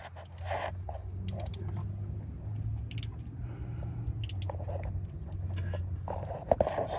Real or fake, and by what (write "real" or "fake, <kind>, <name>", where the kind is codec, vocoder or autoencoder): real